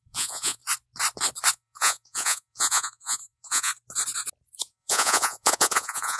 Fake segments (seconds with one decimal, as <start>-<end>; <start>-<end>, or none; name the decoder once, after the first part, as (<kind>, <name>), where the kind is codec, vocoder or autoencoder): 0.0-0.6 (vocoder, Vocos); 1.5-3.7; 4.6-6.2